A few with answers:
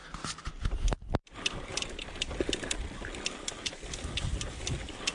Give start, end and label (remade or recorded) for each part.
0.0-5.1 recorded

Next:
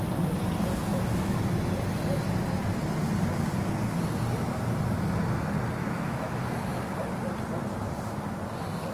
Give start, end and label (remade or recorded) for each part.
0.0-0.9 recorded; 0.9-1.4 remade; 1.4-5.8 recorded; 5.8-6.4 remade; 6.4-8.9 recorded

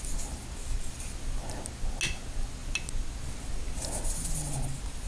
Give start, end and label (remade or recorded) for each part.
0.0-5.1 recorded

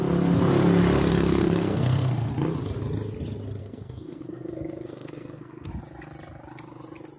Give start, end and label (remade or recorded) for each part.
0.0-1.1 recorded; 1.1-2.3 remade; 2.3-3.6 recorded; 3.6-5.7 remade; 5.7-7.2 recorded

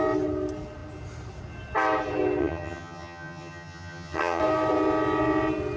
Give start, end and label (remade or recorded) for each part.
0.0-2.4 recorded; 2.4-4.4 remade; 4.4-5.8 recorded

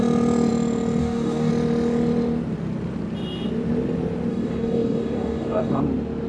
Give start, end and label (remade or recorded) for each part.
0.0-1.0 recorded; 1.0-1.5 remade; 1.5-4.3 recorded; 4.3-5.8 remade; 5.8-6.3 recorded